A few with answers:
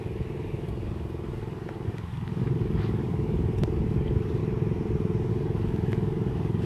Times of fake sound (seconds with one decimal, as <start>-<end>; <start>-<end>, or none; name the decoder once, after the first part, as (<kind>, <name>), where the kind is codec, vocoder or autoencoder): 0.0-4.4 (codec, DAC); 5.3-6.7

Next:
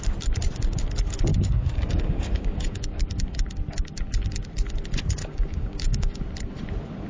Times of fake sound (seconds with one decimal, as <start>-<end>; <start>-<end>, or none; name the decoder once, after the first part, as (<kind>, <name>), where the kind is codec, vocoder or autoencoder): 1.3-3.0 (codec, DAC); 5.2-6.2

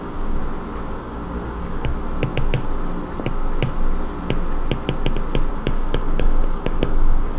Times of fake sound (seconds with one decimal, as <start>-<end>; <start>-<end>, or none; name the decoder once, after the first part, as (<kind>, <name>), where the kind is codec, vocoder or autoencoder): 0.0-0.4 (codec, DAC); 1.0-1.9; 5.5-7.4